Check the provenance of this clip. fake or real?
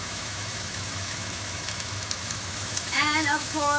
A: fake